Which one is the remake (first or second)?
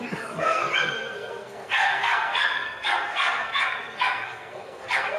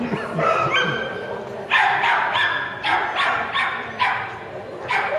first